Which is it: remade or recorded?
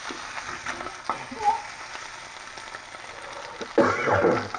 recorded